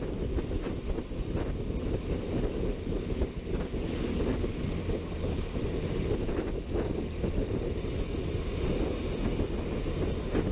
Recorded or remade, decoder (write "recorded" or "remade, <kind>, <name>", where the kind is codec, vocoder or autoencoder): recorded